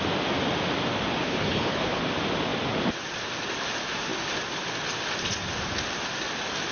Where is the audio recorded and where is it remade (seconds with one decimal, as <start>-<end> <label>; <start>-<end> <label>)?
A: 0.0-1.2 recorded; 1.2-2.0 remade; 2.0-6.7 recorded